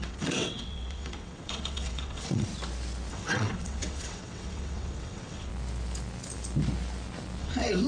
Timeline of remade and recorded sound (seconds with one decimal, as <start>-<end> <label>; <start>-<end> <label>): 0.0-2.5 remade; 2.5-3.1 recorded; 3.1-5.5 remade; 5.5-7.4 recorded; 7.4-7.9 remade

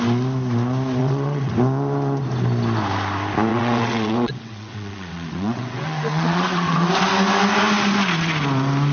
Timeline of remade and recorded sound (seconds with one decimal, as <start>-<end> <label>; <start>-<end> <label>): 0.0-1.0 recorded; 1.0-1.5 remade; 1.5-3.5 recorded; 3.5-6.9 remade; 6.9-8.9 recorded

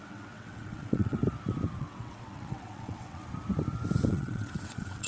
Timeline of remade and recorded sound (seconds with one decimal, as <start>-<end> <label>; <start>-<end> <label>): 0.0-1.2 remade; 1.2-1.8 recorded; 1.8-3.2 remade; 3.2-4.1 recorded; 4.1-5.1 remade